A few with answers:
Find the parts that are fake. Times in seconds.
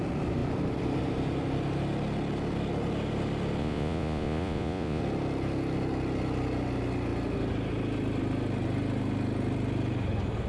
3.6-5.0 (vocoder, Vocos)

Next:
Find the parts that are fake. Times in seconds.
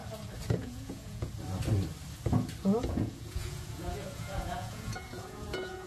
0.6-1.3 (vocoder, Vocos); 2.6-5.9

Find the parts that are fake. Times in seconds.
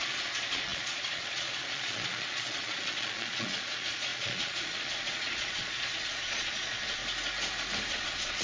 0.0-7.0 (vocoder, Vocos); 7.9-8.4